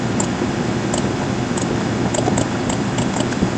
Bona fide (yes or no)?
yes